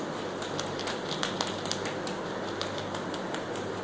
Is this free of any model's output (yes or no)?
yes